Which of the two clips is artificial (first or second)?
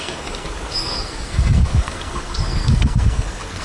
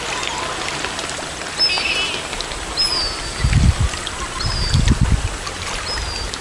first